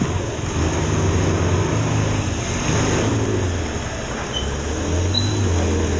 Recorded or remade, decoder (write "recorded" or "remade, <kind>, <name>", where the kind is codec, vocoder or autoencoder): recorded